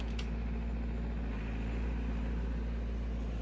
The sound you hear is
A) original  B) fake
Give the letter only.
A